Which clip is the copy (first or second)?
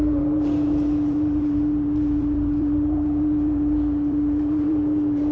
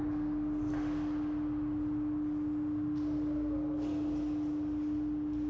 first